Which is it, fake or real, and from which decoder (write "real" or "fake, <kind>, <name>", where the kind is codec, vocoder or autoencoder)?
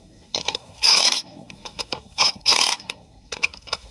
fake, codec, SNAC